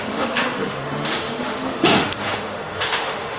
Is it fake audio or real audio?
fake